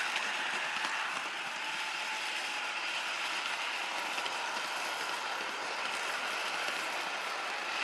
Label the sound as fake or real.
real